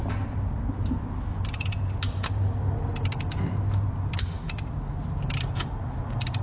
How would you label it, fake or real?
real